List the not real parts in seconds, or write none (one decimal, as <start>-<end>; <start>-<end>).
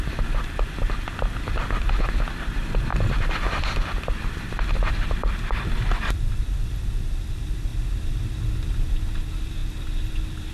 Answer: 0.0-2.9; 4.9-7.7; 8.9-10.5